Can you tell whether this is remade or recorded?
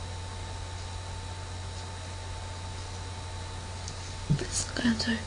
recorded